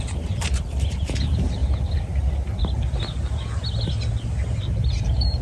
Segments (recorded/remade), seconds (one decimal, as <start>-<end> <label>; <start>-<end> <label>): 0.0-1.6 remade; 1.6-4.6 recorded; 4.6-5.4 remade

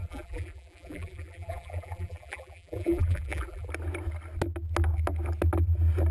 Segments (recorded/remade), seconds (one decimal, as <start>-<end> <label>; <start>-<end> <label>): 0.0-3.7 remade; 3.7-6.1 recorded

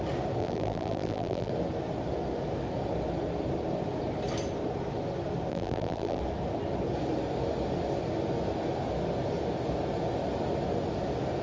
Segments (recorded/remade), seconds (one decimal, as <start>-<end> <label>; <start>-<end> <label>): 0.0-0.4 recorded; 0.4-1.5 remade; 1.5-5.5 recorded; 5.5-6.2 remade; 6.2-11.4 recorded